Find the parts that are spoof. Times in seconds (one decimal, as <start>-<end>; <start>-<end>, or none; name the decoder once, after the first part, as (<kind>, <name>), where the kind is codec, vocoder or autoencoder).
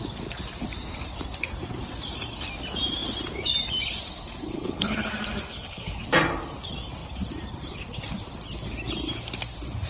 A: 4.4-5.1 (codec, HILCodec); 5.5-6.0